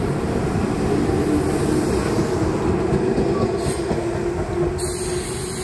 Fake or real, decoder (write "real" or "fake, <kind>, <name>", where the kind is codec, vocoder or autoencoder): real